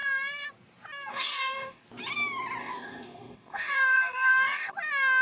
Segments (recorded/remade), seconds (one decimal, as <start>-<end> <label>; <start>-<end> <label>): 0.0-1.1 recorded; 1.1-1.8 remade; 1.8-2.6 recorded; 2.6-4.7 remade; 4.7-5.2 recorded